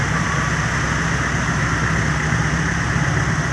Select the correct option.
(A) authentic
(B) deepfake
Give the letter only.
A